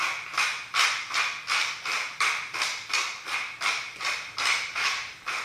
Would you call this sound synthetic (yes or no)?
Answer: no